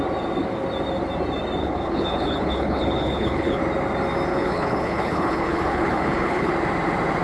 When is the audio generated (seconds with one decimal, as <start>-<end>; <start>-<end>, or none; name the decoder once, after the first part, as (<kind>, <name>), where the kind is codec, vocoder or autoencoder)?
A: 1.6-3.6 (codec, HILCodec); 4.3-6.5